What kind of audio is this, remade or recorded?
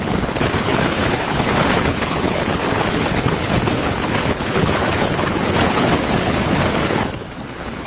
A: remade